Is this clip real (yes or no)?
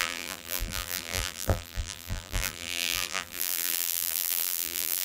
no